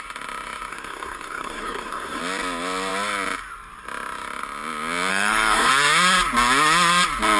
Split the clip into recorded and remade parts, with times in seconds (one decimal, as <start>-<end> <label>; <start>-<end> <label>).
0.0-0.7 recorded; 0.7-2.2 remade; 2.2-5.1 recorded; 5.1-5.7 remade; 5.7-7.4 recorded